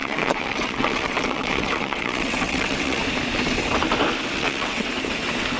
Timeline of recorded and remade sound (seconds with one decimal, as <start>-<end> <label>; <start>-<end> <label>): 0.0-3.0 remade; 3.0-4.3 recorded; 4.3-4.9 remade; 4.9-5.6 recorded